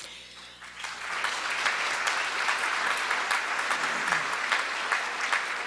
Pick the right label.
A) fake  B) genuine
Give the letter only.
B